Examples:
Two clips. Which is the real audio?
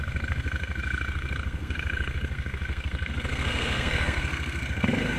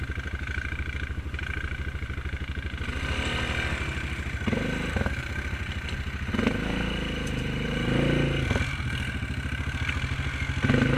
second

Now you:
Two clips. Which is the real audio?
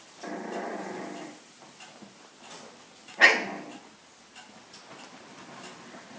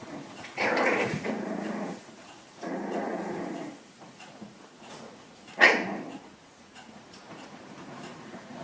first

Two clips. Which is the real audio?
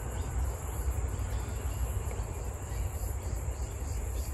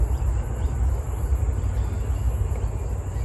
second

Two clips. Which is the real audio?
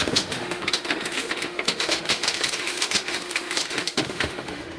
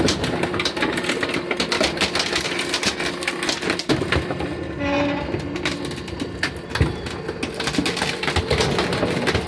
second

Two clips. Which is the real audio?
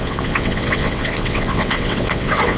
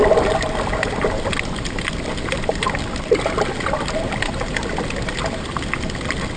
second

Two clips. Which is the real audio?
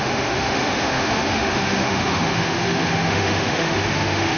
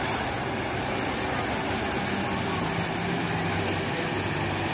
second